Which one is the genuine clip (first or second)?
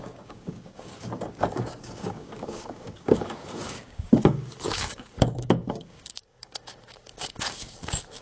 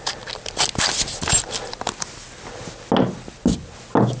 second